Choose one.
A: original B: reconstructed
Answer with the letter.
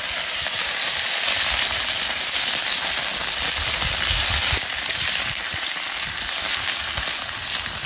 A